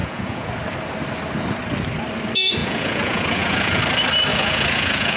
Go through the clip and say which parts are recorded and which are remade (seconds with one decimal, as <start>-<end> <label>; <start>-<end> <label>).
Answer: 0.0-0.5 remade; 0.5-2.6 recorded; 2.6-3.8 remade; 3.8-4.3 recorded; 4.3-5.2 remade